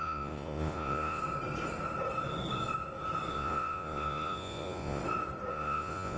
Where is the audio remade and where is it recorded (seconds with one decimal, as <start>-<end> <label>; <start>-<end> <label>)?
0.0-1.2 remade; 1.2-3.3 recorded; 3.3-5.0 remade; 5.0-5.5 recorded; 5.5-6.2 remade